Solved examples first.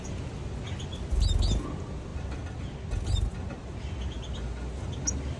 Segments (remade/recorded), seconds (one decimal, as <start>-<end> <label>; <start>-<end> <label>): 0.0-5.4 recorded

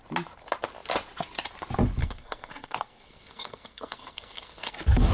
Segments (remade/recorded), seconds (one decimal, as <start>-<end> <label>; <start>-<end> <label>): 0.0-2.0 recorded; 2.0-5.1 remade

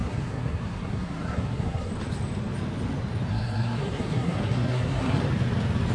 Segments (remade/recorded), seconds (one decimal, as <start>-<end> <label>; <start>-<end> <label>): 0.0-1.9 remade; 1.9-3.3 recorded; 3.3-5.2 remade; 5.2-5.9 recorded

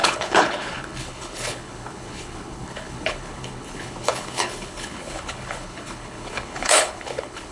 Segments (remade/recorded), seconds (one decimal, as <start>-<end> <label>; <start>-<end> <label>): 0.0-7.5 remade

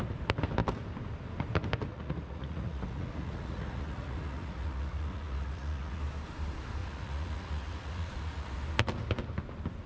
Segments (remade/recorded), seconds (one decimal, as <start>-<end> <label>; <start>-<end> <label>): 0.0-1.9 recorded; 1.9-6.0 remade; 6.0-6.8 recorded; 6.8-8.5 remade; 8.5-9.9 recorded

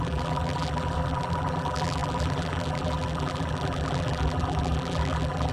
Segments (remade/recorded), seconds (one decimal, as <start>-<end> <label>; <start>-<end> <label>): 0.0-5.5 remade